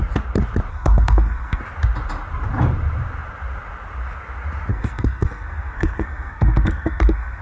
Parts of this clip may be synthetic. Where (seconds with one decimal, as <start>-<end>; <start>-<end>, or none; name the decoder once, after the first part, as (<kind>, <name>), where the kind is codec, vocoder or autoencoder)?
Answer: 0.7-1.6 (codec, SNAC); 4.7-7.4